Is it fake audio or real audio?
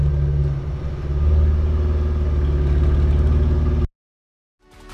real